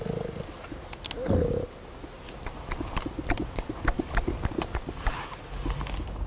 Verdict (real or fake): real